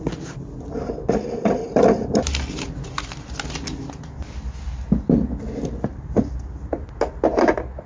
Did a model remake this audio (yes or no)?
no